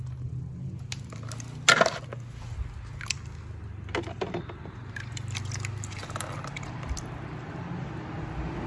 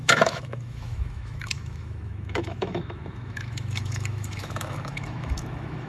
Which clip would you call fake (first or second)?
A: second